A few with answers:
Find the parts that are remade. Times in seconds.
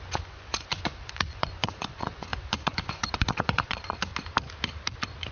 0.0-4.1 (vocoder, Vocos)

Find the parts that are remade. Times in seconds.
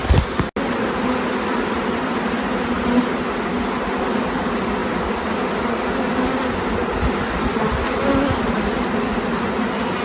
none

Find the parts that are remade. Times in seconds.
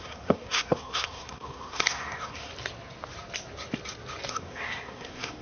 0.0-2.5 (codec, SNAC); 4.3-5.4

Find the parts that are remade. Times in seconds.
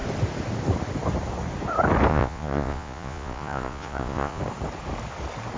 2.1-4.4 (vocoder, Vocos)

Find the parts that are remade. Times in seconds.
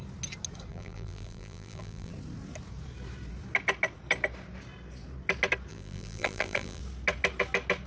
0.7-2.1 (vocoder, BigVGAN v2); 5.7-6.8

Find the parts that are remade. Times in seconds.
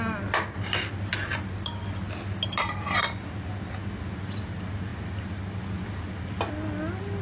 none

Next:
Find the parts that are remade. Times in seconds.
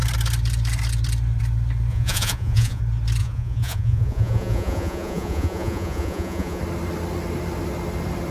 1.9-2.8 (vocoder, Vocos); 3.2-6.6